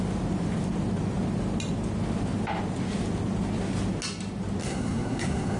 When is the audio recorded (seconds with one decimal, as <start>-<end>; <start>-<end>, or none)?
0.0-4.6